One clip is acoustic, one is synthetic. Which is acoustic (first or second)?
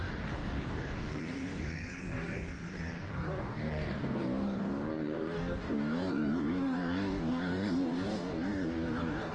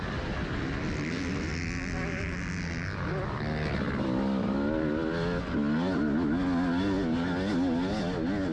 second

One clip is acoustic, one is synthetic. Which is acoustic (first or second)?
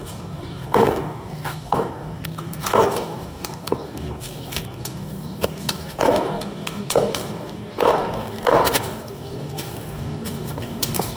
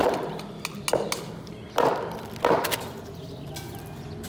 second